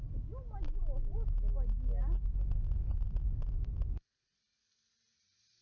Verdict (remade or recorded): recorded